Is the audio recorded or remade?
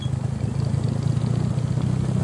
recorded